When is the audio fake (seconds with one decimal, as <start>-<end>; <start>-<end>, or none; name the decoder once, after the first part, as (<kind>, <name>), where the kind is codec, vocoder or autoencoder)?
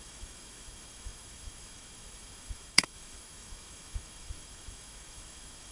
0.0-5.7 (autoencoder, DAC-VAE)